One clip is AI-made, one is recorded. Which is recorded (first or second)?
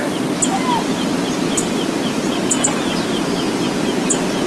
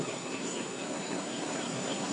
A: first